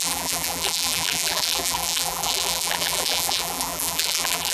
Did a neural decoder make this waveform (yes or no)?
yes